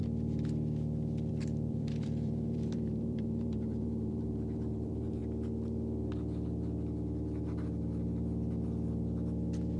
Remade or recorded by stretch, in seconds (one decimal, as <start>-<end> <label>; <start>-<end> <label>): 0.0-1.3 recorded; 1.3-5.2 remade; 5.2-9.8 recorded